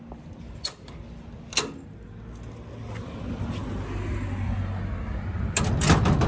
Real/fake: real